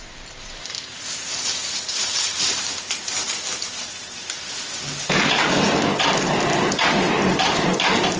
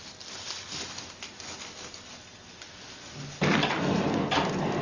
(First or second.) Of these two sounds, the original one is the second